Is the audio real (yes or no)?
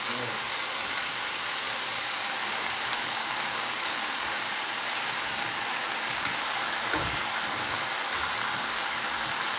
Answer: no